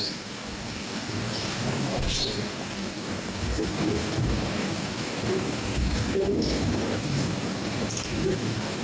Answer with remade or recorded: remade